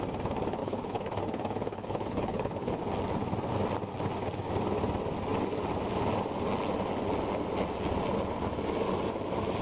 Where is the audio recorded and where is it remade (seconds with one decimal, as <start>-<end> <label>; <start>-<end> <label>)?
0.0-0.6 recorded; 0.6-2.8 remade; 2.8-9.6 recorded